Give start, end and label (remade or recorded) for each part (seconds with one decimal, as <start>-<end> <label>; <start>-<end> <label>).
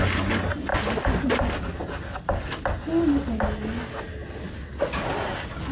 0.0-5.7 recorded